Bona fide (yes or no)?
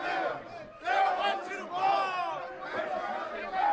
yes